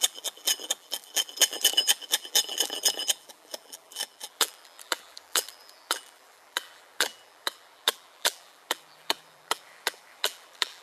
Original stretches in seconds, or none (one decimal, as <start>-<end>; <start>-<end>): none